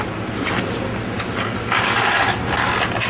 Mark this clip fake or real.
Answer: real